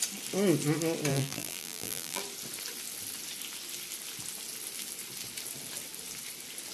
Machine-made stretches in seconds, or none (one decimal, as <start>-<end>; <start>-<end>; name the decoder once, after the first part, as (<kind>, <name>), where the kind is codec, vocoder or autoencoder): 1.1-2.2 (vocoder, BigVGAN v2)